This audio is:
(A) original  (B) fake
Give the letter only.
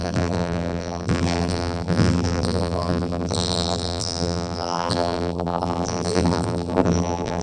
B